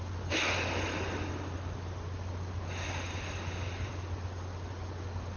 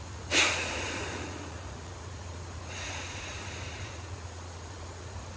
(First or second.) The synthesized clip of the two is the second